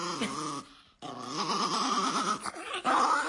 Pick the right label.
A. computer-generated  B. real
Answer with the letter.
B